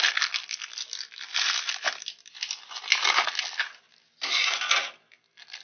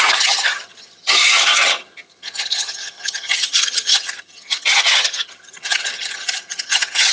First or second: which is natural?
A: first